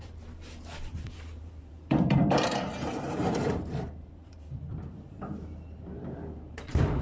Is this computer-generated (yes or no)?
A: yes